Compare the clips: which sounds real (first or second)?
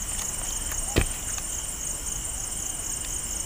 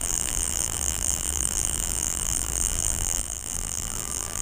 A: first